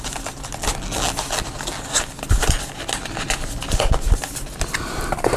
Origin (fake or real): real